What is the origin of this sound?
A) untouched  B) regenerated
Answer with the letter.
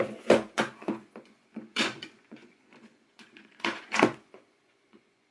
B